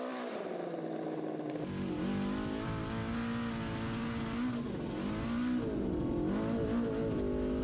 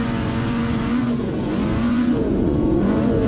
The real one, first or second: first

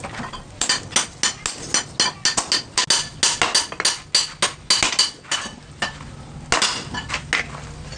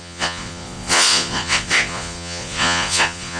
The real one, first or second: first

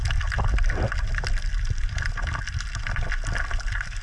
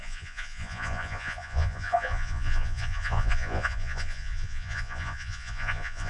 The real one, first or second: first